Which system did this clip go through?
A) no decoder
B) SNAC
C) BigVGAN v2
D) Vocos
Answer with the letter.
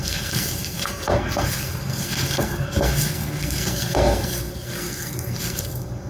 B